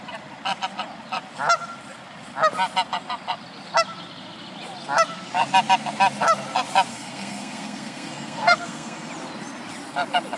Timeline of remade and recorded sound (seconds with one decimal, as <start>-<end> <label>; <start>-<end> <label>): 0.0-6.9 recorded; 6.9-9.1 remade; 9.1-10.4 recorded